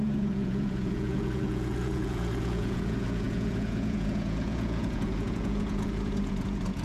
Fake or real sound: fake